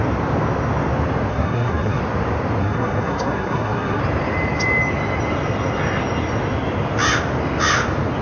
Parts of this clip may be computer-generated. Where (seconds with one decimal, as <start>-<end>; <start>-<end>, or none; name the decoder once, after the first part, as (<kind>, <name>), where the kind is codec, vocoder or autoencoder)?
1.3-2.0 (codec, SNAC); 2.6-4.0